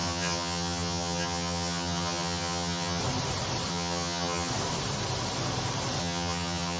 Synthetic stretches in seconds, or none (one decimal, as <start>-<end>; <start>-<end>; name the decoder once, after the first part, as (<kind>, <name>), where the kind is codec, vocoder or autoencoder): 0.0-3.0 (vocoder, HiFi-GAN); 3.7-4.5; 6.0-6.8